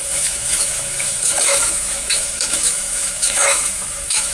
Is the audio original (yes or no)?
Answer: no